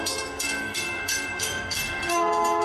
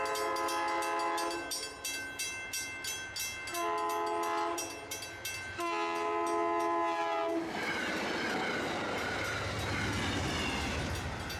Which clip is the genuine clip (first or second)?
second